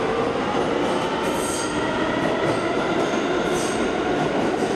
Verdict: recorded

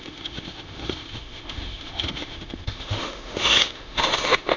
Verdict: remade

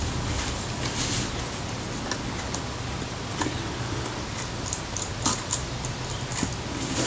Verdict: recorded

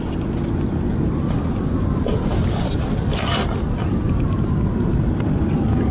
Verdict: remade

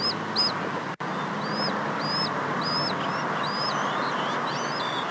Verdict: recorded